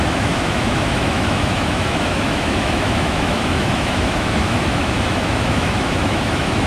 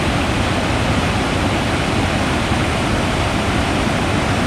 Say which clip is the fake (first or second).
first